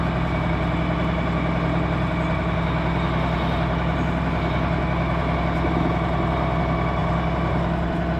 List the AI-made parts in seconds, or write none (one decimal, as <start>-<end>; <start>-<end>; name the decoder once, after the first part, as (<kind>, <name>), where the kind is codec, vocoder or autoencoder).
none